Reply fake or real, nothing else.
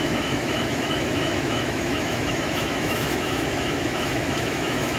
fake